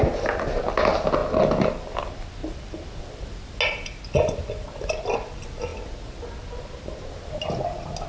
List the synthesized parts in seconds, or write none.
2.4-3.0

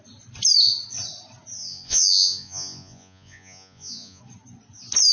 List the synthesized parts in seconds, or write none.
1.6-4.2

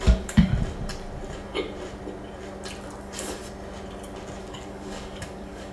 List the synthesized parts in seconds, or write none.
0.0-0.5; 3.0-3.4; 4.4-5.7

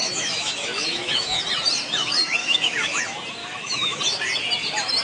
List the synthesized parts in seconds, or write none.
0.0-1.4; 2.4-3.0; 3.4-4.0

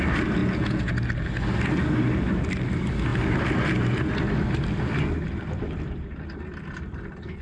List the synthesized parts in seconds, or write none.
0.4-0.9

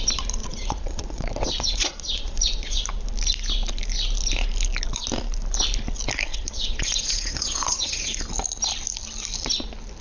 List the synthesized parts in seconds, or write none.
0.4-2.8; 6.3-8.2

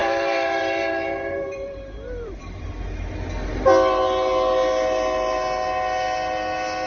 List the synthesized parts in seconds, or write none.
0.0-2.7